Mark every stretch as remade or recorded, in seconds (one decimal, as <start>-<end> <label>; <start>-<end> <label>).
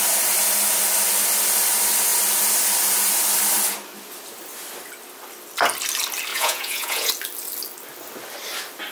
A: 0.0-6.3 recorded; 6.3-7.1 remade; 7.1-8.9 recorded